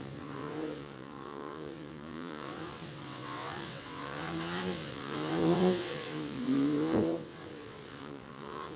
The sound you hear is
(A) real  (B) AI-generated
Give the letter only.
B